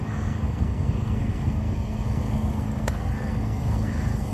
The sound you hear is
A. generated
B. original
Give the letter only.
A